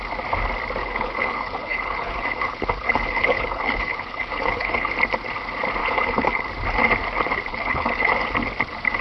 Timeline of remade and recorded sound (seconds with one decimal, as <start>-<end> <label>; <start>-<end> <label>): 0.0-0.8 recorded; 0.8-4.9 remade; 4.9-5.8 recorded; 5.8-6.5 remade; 6.5-7.5 recorded; 7.5-8.1 remade; 8.1-9.0 recorded